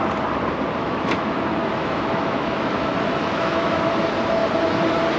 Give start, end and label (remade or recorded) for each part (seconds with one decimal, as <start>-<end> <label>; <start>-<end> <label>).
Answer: 0.0-0.8 recorded; 0.8-3.9 remade; 3.9-5.2 recorded